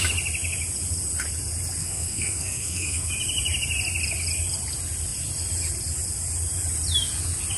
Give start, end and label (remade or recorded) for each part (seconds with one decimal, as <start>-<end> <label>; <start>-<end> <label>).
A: 0.0-1.8 recorded; 1.8-3.1 remade; 3.1-7.6 recorded